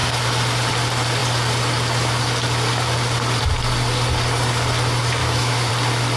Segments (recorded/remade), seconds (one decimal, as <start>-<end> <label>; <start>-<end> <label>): 0.0-5.2 recorded; 5.2-5.7 remade; 5.7-6.2 recorded